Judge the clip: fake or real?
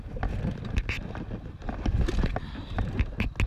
real